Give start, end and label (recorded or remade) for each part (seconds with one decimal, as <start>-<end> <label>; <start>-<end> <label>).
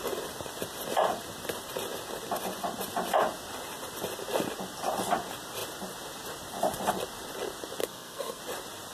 0.0-7.8 recorded; 7.8-8.4 remade; 8.4-8.9 recorded